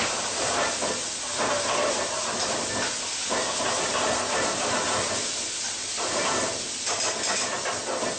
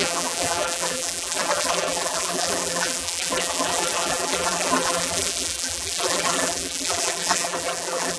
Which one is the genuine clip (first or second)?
first